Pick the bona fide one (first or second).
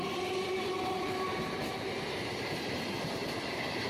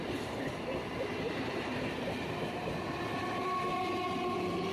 second